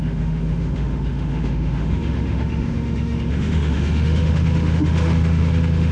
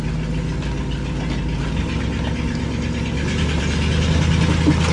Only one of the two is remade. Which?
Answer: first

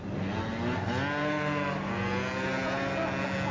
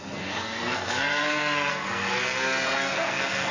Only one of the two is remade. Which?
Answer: second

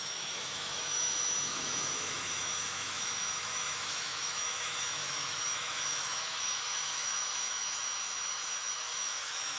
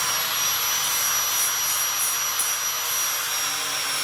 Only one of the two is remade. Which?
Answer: first